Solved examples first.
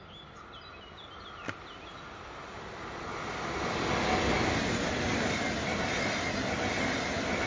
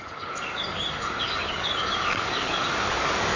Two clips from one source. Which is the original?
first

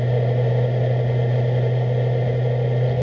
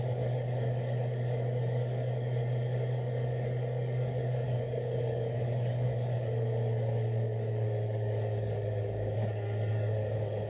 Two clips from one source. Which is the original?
first